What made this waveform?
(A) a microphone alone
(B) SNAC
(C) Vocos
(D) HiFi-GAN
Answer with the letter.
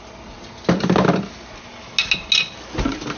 A